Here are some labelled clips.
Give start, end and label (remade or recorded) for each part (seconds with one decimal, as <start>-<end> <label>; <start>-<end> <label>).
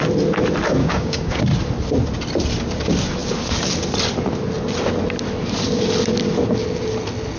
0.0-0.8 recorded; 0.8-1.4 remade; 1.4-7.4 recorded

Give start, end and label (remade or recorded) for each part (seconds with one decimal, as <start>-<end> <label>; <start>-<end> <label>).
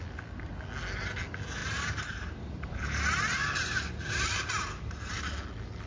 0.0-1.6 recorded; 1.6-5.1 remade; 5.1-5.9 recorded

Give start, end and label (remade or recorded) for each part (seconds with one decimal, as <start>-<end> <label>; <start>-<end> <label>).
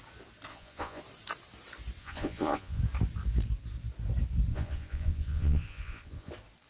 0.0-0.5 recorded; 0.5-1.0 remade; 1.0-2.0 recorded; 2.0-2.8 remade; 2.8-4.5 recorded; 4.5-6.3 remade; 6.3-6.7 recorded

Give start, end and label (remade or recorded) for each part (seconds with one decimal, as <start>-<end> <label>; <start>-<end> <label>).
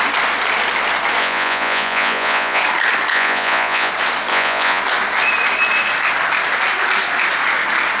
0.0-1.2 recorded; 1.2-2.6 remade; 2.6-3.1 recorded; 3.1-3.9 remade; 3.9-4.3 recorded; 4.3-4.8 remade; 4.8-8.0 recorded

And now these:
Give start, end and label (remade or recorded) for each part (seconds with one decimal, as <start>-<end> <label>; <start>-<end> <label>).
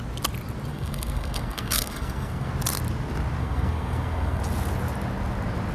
0.0-0.7 recorded; 0.7-2.5 remade; 2.5-3.4 recorded; 3.4-4.4 remade; 4.4-5.7 recorded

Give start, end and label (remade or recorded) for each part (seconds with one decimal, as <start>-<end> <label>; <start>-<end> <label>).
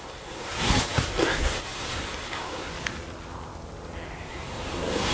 0.0-2.7 remade; 2.7-4.3 recorded; 4.3-5.1 remade